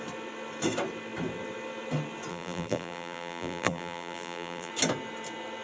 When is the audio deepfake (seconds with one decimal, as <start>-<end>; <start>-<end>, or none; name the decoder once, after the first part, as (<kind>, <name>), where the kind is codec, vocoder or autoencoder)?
2.3-4.7 (vocoder, BigVGAN v2)